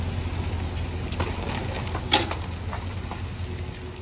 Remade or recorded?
recorded